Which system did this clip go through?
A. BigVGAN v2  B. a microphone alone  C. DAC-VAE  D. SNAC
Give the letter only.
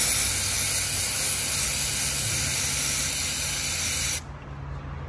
B